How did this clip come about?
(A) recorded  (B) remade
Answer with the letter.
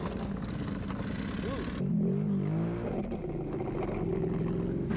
A